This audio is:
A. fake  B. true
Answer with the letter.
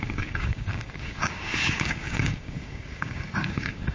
A